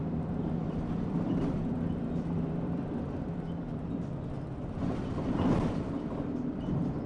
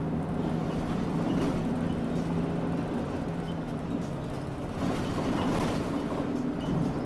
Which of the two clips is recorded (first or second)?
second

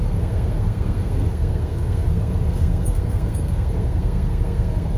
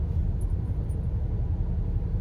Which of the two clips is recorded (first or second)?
second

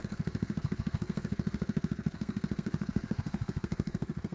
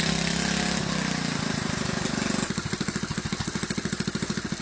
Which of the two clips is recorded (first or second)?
second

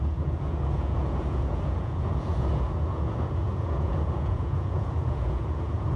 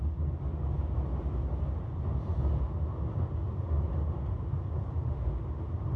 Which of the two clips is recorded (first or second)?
second